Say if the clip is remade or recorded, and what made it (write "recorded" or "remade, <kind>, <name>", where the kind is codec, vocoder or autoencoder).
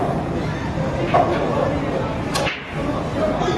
recorded